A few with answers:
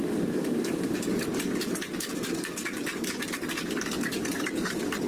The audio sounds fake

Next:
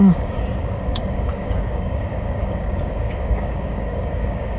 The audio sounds fake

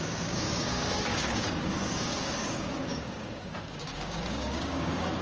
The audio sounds fake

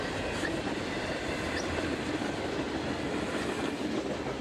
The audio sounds real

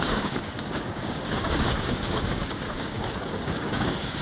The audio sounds fake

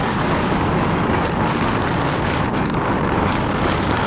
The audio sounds fake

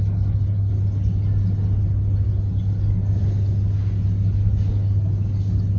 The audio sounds real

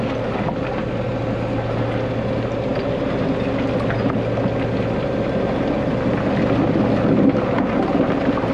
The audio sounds real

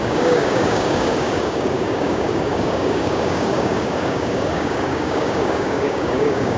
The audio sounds fake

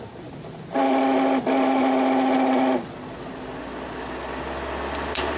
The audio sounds real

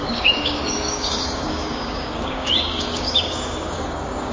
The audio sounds fake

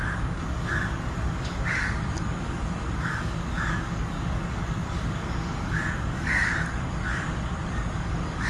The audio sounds fake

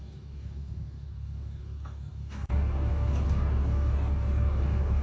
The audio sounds fake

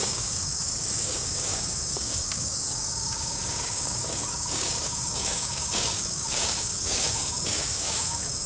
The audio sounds fake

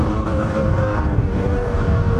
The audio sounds fake